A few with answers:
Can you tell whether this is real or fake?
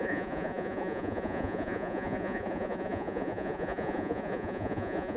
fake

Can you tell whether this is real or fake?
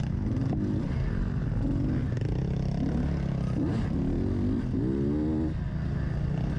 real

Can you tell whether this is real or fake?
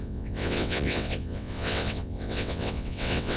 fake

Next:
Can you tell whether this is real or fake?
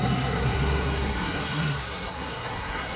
fake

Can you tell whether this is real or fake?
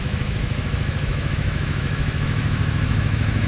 fake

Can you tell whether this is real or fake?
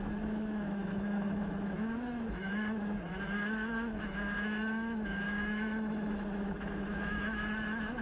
fake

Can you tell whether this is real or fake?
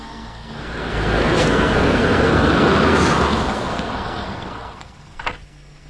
fake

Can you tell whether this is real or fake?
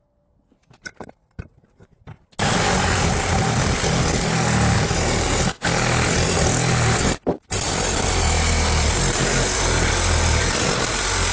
real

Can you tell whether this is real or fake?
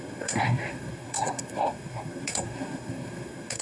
fake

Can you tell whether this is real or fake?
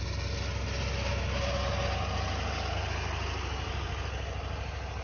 real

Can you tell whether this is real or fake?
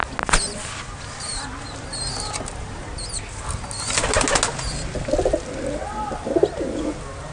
real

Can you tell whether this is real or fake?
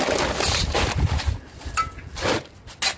real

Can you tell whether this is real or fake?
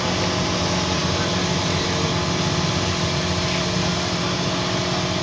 real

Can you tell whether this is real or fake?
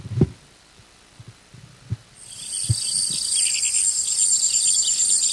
real